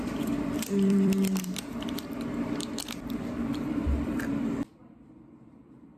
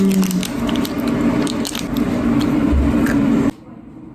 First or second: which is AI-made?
first